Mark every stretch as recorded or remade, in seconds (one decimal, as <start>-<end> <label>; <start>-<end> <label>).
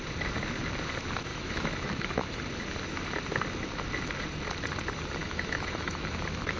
0.0-1.3 recorded; 1.3-2.4 remade; 2.4-5.2 recorded; 5.2-6.6 remade